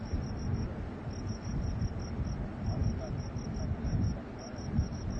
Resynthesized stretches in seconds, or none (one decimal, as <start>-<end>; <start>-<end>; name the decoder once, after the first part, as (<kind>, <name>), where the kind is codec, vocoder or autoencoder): none